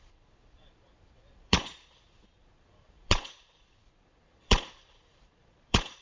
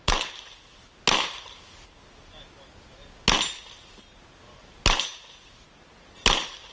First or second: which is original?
second